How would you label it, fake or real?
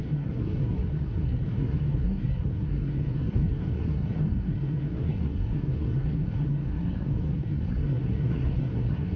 fake